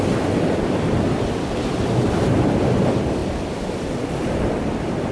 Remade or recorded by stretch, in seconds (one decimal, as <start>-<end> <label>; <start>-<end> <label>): 0.0-5.1 recorded